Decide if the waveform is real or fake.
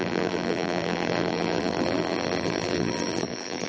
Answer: fake